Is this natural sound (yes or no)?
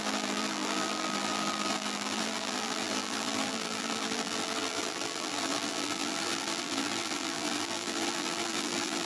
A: no